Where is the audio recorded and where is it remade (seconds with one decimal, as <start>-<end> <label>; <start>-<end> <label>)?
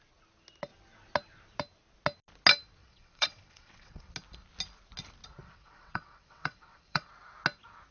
0.0-2.8 recorded; 2.8-4.1 remade; 4.1-5.4 recorded; 5.4-7.1 remade; 7.1-7.9 recorded